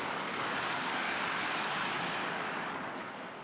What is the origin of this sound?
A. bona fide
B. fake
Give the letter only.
B